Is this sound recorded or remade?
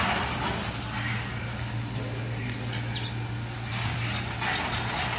recorded